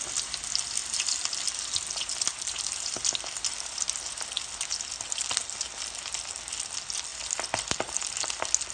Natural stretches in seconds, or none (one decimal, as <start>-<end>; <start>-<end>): 0.0-8.7